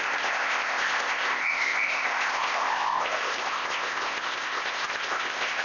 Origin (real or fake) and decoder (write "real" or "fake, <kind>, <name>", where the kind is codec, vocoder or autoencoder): fake, codec, ZipCodec